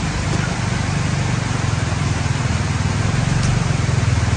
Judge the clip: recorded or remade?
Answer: recorded